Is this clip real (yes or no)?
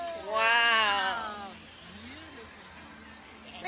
yes